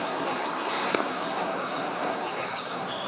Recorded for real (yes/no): no